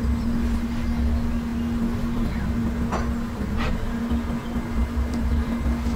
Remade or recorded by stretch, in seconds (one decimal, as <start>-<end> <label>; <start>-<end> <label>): 0.0-4.8 recorded; 4.8-5.6 remade; 5.6-6.0 recorded